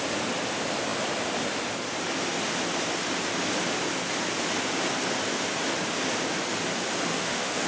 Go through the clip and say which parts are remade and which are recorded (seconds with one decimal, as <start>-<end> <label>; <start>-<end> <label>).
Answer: 0.0-7.1 recorded; 7.1-7.7 remade